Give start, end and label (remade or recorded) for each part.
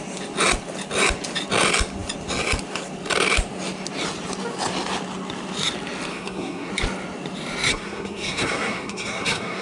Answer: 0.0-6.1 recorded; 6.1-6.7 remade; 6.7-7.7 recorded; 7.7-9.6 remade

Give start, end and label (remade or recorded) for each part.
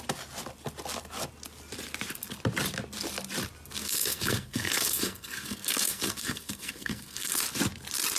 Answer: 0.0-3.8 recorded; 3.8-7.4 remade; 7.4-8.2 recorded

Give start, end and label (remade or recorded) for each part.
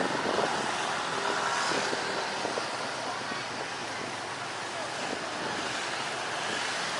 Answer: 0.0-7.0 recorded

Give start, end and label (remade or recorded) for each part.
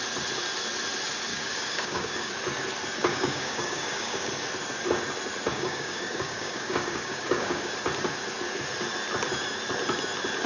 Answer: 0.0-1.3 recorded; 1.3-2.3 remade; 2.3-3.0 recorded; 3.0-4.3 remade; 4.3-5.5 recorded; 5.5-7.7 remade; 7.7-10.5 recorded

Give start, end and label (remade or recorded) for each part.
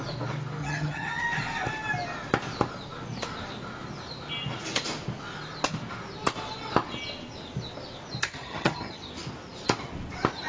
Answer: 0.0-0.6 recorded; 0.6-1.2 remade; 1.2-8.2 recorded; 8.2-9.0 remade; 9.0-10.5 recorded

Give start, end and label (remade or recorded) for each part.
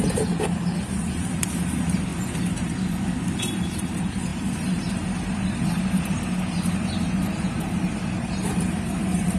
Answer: 0.0-2.1 remade; 2.1-3.4 recorded; 3.4-9.4 remade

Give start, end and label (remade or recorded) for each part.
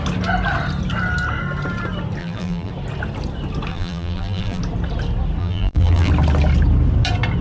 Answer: 0.0-2.2 recorded; 2.2-2.7 remade; 2.7-3.7 recorded; 3.7-4.6 remade; 4.6-5.4 recorded; 5.4-6.1 remade; 6.1-7.4 recorded